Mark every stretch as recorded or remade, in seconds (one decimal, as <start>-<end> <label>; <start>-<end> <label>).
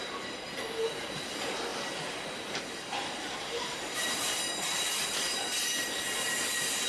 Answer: 0.0-1.7 recorded; 1.7-4.4 remade; 4.4-6.9 recorded